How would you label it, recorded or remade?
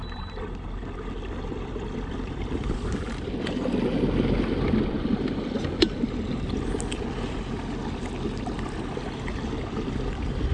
recorded